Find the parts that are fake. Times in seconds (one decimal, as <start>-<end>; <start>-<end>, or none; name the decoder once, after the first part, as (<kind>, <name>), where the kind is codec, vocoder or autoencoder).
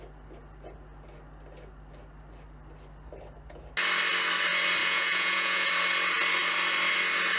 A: 4.8-5.7 (vocoder, Vocos)